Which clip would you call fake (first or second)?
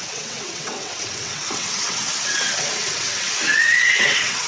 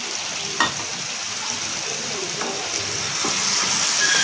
first